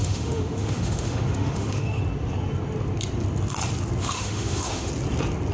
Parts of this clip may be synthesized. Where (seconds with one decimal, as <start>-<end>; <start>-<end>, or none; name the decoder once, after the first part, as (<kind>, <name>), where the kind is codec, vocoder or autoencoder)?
0.0-2.0 (autoencoder, DAC-VAE); 4.0-4.9